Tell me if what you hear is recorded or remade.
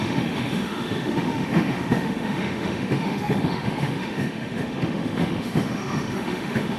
remade